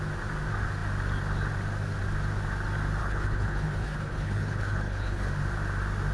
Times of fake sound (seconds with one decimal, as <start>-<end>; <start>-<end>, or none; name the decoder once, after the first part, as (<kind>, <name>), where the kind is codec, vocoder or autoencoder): 3.0-5.3 (codec, HILCodec)